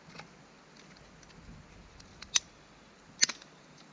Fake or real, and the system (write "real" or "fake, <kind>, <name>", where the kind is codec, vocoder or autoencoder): real